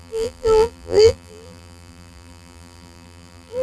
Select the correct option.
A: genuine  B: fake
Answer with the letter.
B